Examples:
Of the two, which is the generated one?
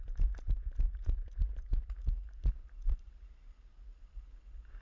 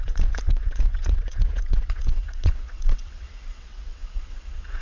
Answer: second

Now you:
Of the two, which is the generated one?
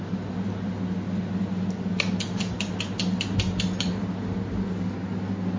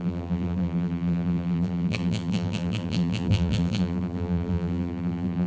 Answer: second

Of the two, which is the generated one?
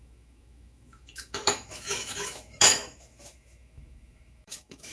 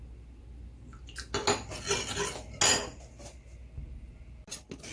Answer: first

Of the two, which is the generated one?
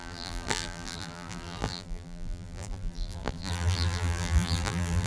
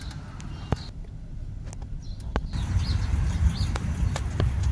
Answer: first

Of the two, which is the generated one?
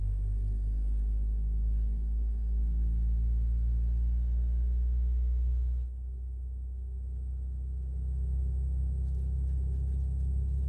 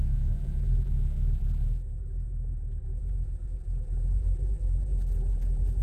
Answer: second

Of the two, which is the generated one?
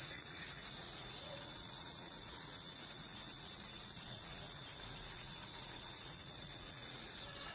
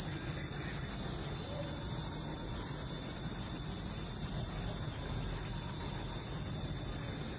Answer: first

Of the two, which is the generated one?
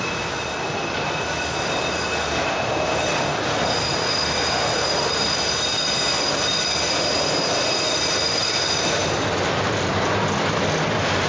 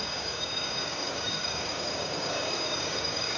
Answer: second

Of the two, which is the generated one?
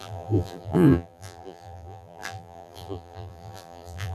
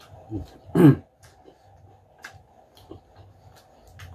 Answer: first